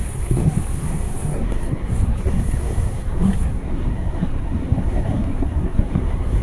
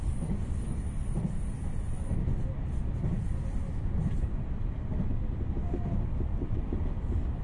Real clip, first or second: second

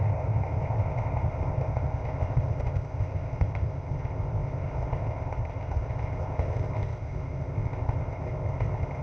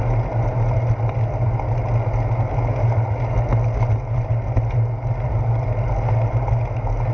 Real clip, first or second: second